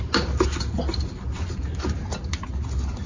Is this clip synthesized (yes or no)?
no